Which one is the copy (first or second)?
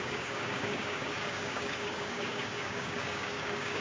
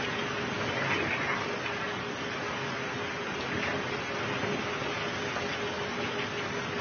first